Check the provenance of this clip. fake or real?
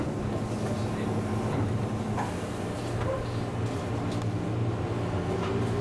real